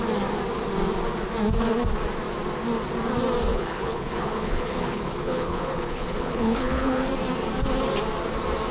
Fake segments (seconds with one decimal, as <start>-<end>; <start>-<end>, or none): 3.5-7.1